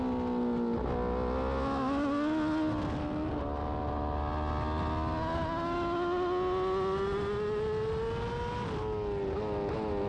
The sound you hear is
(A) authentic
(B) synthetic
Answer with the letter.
A